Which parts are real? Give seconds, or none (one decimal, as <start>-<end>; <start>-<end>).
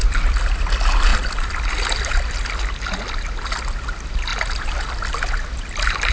0.0-6.1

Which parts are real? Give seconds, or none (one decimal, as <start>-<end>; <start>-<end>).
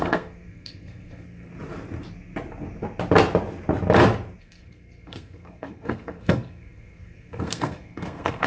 1.5-4.4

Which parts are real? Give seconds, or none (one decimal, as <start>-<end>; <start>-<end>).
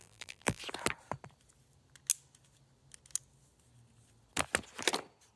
0.6-5.4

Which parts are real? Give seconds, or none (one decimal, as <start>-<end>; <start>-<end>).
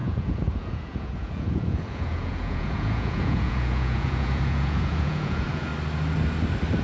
5.7-6.8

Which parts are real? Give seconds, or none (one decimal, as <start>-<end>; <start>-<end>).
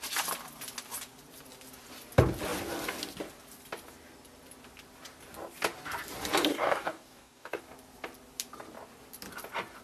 0.0-6.5; 7.6-9.8